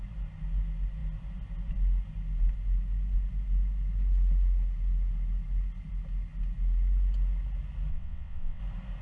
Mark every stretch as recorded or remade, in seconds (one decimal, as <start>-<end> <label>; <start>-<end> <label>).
0.0-7.9 recorded; 7.9-8.6 remade; 8.6-9.0 recorded